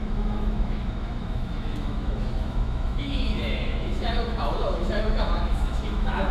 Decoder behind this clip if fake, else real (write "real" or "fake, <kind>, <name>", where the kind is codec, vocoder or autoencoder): fake, autoencoder, DAC-VAE